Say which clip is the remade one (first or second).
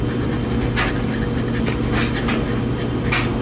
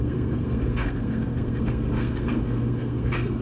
second